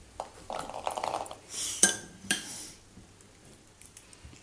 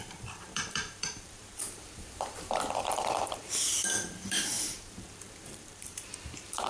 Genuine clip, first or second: first